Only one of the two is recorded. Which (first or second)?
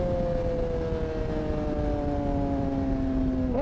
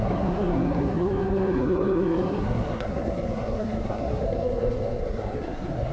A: first